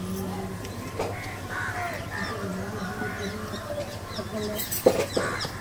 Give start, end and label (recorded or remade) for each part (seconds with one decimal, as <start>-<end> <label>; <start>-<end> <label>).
0.0-5.6 recorded